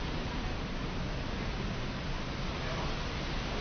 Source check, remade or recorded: recorded